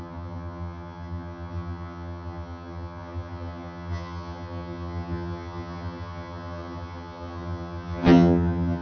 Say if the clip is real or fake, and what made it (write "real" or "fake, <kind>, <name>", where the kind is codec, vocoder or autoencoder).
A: fake, vocoder, HiFi-GAN